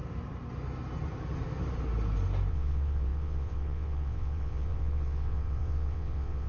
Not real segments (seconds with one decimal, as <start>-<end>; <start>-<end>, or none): 2.5-6.5

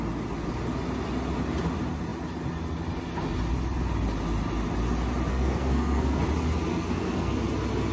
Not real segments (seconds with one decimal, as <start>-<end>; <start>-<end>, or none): 5.3-6.2; 6.7-7.4

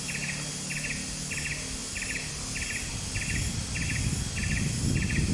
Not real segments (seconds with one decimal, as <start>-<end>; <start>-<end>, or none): none

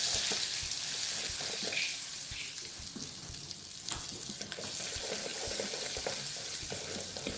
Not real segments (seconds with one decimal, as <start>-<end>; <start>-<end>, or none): 1.9-2.8